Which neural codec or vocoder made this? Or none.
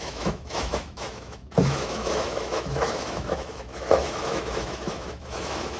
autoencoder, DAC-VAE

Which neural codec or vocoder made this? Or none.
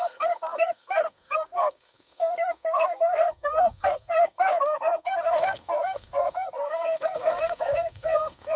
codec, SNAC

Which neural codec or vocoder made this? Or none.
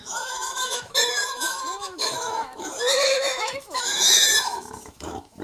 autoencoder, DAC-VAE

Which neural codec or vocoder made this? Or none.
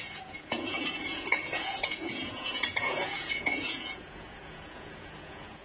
vocoder, Vocos